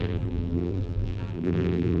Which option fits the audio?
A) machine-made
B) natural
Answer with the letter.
A